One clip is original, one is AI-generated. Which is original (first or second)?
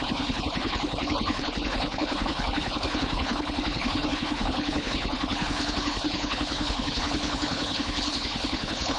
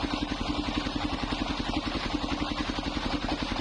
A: second